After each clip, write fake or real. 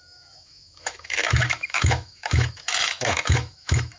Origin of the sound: fake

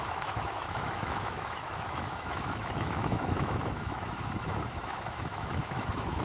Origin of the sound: fake